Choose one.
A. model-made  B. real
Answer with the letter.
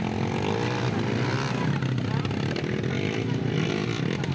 B